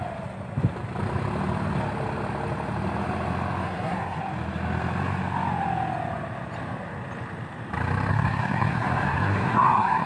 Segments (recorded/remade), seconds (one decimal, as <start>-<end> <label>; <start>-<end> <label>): 0.0-3.6 recorded; 3.6-4.2 remade; 4.2-8.1 recorded; 8.1-10.1 remade